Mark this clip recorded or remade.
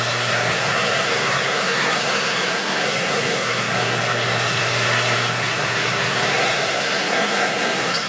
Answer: remade